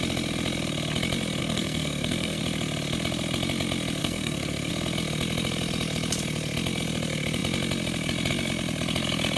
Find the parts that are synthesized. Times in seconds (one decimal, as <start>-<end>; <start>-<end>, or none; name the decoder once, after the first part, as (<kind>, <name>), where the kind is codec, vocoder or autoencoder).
1.4-2.4 (codec, SNAC); 4.0-4.7